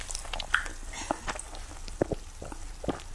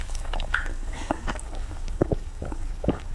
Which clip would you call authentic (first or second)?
first